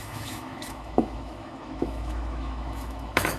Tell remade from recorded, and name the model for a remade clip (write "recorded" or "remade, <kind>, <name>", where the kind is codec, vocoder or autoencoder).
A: remade, autoencoder, DAC-VAE